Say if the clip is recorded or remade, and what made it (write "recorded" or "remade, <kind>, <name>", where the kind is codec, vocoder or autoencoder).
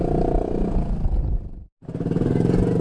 recorded